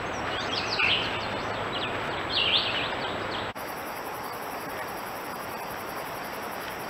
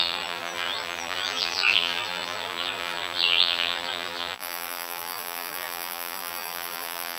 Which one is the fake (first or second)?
second